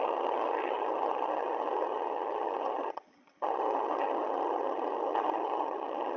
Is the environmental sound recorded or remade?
remade